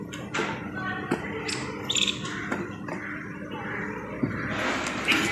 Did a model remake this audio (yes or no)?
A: no